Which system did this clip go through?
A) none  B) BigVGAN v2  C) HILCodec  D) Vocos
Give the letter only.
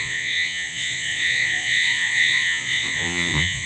D